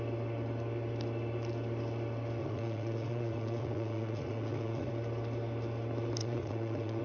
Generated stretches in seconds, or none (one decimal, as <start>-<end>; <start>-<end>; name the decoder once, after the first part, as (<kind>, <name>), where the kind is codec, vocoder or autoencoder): 2.4-4.9 (vocoder, Vocos); 6.2-7.0